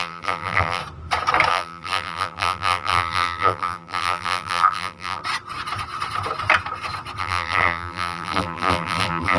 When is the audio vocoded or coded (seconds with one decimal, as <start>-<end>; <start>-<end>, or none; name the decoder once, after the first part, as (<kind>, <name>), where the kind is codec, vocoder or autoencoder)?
0.0-0.8 (vocoder, BigVGAN v2); 1.5-5.2; 7.2-9.4